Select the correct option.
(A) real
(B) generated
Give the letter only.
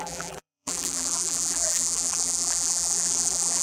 B